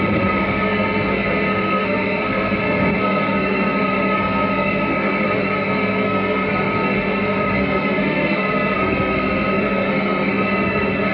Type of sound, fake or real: fake